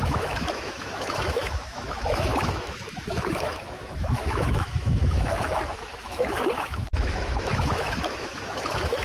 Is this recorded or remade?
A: remade